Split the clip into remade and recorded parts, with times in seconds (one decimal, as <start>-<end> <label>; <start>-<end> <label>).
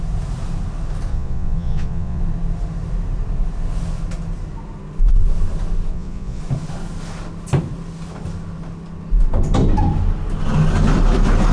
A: 0.0-1.1 recorded; 1.1-2.2 remade; 2.2-5.9 recorded; 5.9-6.4 remade; 6.4-11.5 recorded